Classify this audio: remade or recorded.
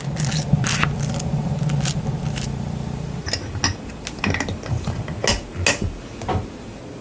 recorded